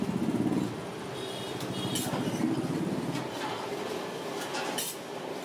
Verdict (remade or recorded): recorded